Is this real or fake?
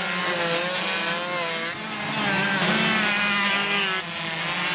real